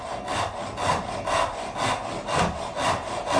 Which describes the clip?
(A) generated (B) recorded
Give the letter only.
B